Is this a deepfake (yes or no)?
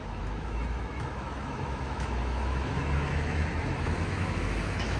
yes